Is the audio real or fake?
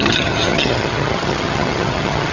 fake